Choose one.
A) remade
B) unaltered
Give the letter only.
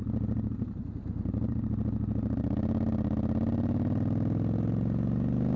B